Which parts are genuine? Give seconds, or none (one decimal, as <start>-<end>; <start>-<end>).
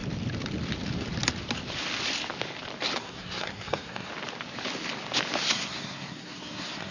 0.0-3.0; 4.1-5.5